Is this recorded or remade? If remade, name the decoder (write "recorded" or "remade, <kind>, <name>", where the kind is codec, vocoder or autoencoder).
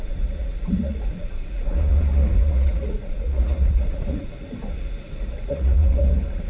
remade, vocoder, Vocos